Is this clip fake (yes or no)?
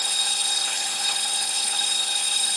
yes